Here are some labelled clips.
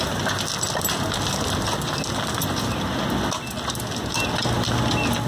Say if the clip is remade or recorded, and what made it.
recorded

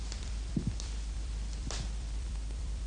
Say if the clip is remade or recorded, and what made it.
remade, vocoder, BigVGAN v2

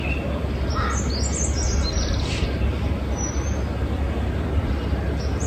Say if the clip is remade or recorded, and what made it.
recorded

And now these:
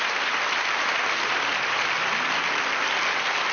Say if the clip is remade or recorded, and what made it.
recorded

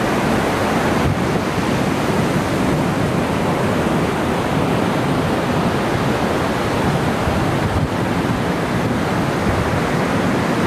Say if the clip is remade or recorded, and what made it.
recorded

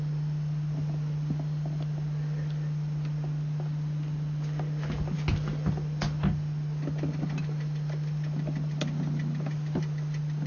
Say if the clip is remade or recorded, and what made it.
recorded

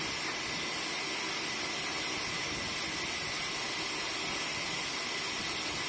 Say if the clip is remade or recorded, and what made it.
recorded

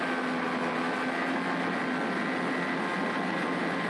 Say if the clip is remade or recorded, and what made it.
recorded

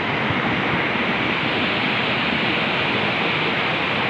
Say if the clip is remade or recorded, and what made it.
recorded